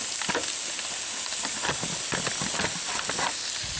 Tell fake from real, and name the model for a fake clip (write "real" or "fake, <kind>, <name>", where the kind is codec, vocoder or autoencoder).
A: real